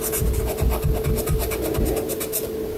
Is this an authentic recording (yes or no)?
yes